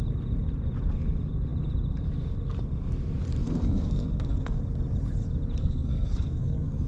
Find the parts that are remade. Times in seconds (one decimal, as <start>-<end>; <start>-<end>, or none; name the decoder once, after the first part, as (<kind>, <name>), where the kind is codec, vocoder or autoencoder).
3.4-4.6 (codec, SNAC); 5.6-6.9